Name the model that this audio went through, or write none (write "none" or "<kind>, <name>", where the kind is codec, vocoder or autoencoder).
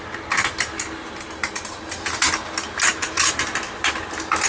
none